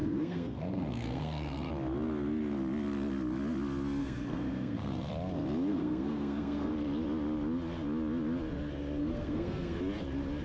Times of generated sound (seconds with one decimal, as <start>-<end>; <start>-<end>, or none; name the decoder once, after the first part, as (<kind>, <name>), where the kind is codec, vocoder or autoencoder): 0.0-1.7 (codec, SNAC); 4.0-5.1; 5.7-6.7; 9.0-9.8